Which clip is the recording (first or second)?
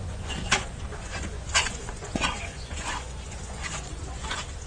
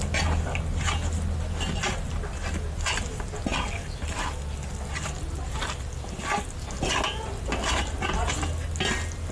second